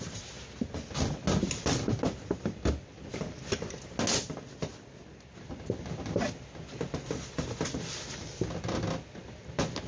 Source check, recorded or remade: recorded